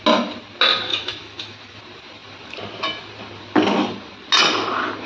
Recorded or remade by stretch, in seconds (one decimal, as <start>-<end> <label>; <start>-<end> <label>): 0.0-0.9 recorded; 0.9-1.8 remade; 1.8-5.1 recorded